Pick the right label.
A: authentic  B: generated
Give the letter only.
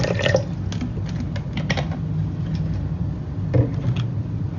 A